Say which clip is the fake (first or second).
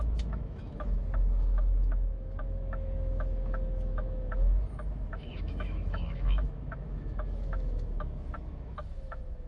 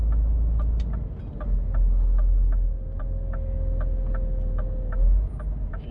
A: first